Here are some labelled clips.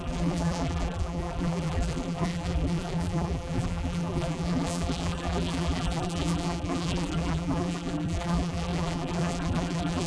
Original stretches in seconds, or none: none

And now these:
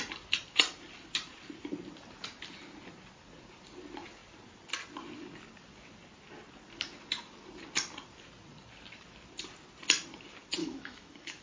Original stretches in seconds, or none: 0.0-10.6